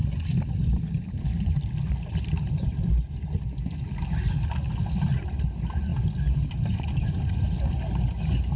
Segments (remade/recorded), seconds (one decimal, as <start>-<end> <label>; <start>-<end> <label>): 0.0-8.6 recorded